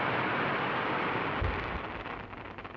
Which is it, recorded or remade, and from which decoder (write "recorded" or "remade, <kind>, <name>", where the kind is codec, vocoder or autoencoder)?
recorded